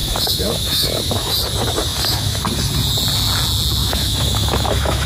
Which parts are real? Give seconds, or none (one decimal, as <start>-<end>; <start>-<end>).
1.3-1.9; 2.4-3.8